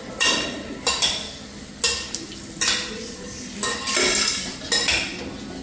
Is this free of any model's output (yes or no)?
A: yes